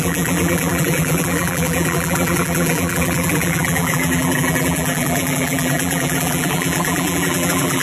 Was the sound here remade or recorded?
remade